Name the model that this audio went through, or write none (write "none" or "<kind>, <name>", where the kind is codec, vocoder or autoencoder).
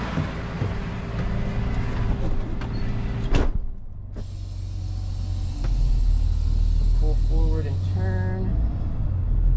none